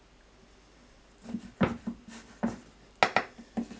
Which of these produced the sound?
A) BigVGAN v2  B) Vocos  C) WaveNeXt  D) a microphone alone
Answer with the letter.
D